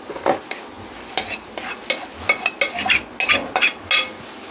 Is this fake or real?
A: real